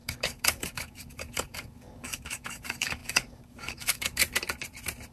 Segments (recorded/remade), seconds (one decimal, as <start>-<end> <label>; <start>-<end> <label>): 0.0-4.2 remade; 4.2-5.1 recorded